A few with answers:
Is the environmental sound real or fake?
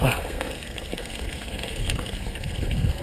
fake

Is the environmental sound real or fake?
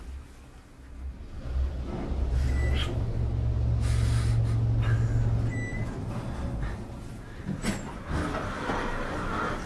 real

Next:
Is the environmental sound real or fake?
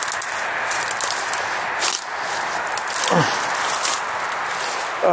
real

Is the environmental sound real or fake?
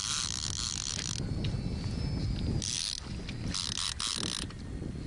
real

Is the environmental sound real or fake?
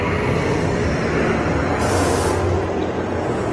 real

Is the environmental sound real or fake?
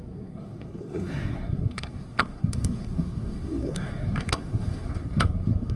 fake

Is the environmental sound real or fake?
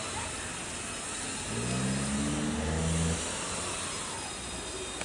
real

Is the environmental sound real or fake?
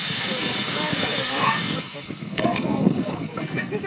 fake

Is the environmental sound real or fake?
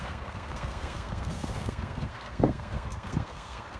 fake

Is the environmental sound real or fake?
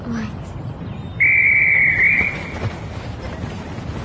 real